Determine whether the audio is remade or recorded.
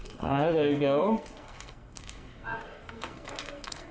remade